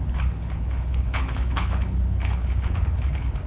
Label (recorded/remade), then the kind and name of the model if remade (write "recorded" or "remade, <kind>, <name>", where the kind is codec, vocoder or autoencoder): remade, codec, HILCodec